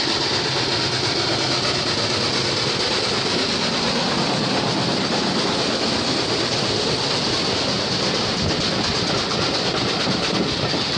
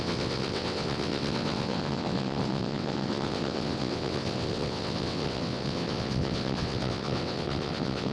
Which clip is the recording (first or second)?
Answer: first